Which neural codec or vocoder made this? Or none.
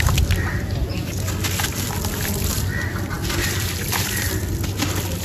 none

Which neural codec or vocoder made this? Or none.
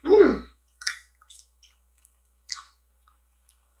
codec, SNAC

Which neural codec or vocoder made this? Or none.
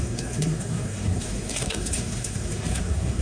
codec, SNAC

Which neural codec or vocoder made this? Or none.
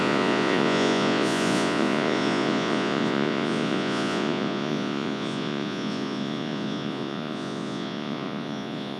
vocoder, Vocos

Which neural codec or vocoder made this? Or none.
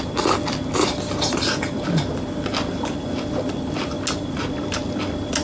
none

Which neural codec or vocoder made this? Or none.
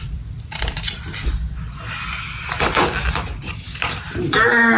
none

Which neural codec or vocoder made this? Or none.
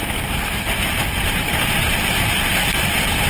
vocoder, BigVGAN v2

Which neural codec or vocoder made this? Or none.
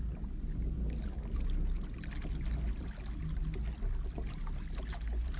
none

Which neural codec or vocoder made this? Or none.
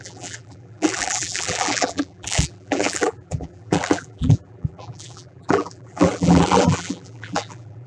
vocoder, BigVGAN v2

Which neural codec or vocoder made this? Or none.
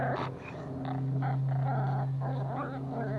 none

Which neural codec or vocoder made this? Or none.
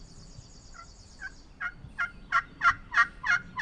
none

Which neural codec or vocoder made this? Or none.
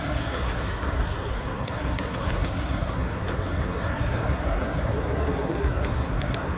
codec, SNAC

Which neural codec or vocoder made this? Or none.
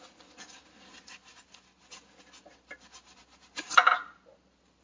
none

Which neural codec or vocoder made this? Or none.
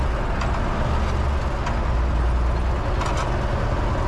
none